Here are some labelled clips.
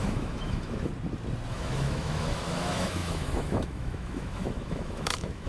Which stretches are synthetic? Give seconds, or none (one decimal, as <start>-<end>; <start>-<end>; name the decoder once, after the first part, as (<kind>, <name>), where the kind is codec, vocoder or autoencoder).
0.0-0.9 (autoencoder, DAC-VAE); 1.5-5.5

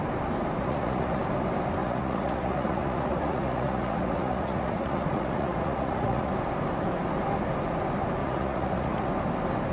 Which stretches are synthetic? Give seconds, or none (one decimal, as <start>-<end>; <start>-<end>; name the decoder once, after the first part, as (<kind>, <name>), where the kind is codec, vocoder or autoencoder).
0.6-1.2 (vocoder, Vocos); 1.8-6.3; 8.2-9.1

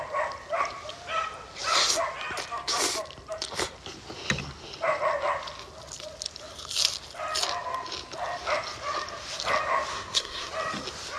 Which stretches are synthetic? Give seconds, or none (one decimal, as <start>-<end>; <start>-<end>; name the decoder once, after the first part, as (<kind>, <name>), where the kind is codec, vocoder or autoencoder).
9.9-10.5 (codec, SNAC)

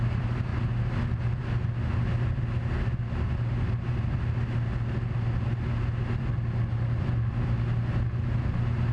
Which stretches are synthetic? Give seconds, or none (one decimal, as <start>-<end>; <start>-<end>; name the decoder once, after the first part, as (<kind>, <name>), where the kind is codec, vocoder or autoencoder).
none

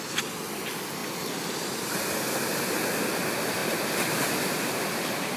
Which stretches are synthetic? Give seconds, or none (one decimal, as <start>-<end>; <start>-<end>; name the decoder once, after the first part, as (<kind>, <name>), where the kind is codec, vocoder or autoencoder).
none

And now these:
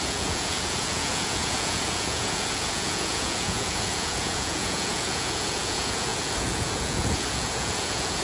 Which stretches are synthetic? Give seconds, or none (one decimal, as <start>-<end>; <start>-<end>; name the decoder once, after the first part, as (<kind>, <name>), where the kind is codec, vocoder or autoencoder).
0.0-8.2 (vocoder, Vocos)

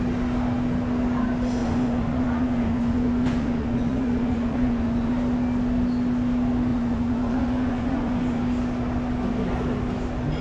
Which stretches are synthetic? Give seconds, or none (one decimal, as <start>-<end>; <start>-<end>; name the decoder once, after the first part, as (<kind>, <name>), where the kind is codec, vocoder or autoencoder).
1.6-5.1 (vocoder, Vocos); 6.7-8.4

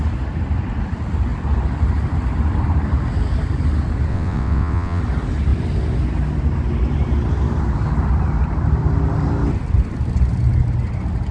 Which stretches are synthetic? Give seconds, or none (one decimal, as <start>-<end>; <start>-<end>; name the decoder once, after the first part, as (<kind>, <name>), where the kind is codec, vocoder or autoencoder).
4.1-5.0 (vocoder, WaveNeXt)